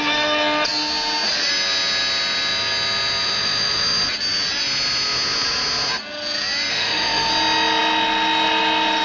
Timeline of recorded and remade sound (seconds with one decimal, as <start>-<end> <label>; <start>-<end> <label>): 0.0-6.7 recorded; 6.7-7.3 remade; 7.3-9.0 recorded